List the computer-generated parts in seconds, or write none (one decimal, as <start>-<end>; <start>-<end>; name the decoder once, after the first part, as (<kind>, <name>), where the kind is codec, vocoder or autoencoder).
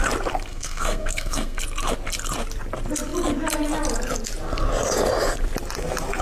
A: 0.5-1.6 (codec, SNAC)